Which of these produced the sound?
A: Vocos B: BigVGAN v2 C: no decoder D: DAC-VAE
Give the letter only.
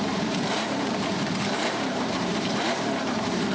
B